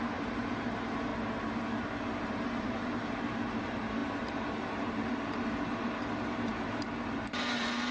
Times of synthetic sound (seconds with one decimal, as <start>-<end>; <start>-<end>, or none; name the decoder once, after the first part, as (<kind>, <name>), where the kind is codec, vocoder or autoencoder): 0.0-1.1 (vocoder, BigVGAN v2); 2.2-7.9